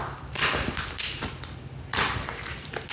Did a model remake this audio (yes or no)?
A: no